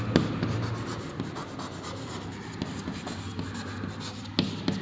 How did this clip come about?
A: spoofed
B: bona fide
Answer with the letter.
B